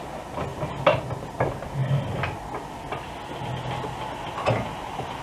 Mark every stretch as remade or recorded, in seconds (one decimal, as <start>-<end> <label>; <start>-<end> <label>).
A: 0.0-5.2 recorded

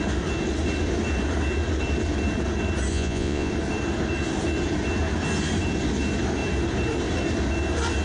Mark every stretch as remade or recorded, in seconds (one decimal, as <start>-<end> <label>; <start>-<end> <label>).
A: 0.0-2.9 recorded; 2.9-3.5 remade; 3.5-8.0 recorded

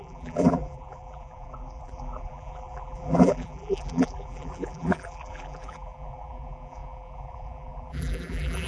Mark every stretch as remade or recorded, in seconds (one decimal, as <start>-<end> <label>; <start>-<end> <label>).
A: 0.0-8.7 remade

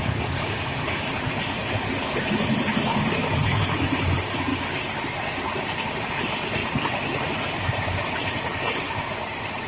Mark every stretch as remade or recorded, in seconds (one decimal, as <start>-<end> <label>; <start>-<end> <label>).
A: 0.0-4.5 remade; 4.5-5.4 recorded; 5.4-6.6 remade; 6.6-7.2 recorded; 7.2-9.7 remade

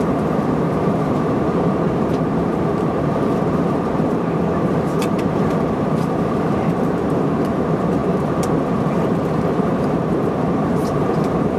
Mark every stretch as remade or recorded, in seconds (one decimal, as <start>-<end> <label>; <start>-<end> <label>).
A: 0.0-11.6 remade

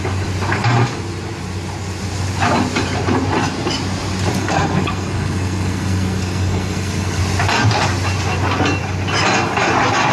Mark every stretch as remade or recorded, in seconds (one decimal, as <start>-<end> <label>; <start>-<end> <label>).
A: 0.0-4.4 recorded; 4.4-7.2 remade; 7.2-10.1 recorded

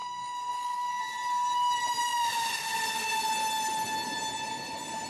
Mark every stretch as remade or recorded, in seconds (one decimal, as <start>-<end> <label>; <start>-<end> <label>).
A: 0.0-1.0 remade; 1.0-5.1 recorded